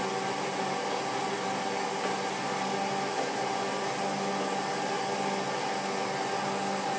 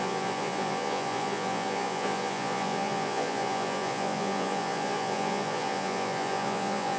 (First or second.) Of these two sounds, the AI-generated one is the second